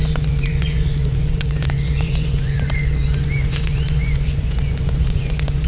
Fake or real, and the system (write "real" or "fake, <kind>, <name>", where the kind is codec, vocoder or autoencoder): fake, vocoder, Vocos